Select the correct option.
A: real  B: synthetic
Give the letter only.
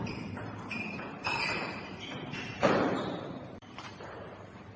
B